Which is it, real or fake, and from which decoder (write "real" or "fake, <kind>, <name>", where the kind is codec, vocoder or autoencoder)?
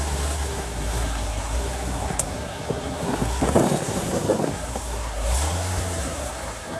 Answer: fake, codec, SNAC